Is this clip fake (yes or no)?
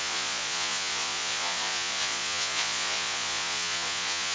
yes